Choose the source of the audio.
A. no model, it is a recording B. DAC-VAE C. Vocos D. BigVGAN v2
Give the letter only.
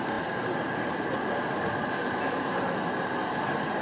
A